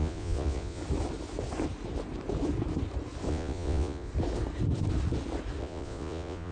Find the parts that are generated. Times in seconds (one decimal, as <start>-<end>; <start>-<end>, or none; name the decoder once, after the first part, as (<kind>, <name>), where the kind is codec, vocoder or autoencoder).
0.0-0.8 (vocoder, Vocos); 3.3-4.1; 5.6-6.5